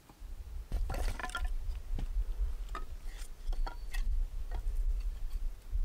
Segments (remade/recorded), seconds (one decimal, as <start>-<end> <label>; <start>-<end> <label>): 0.0-5.8 recorded